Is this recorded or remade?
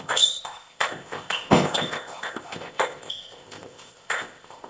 remade